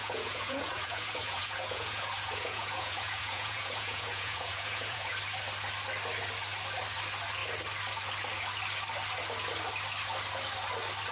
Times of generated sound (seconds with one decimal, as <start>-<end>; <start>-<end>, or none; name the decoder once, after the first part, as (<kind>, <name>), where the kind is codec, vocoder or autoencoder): 0.0-5.1 (vocoder, Vocos)